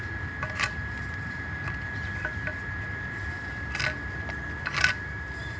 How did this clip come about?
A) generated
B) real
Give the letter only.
B